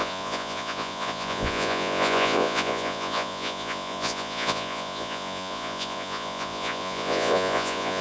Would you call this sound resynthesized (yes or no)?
yes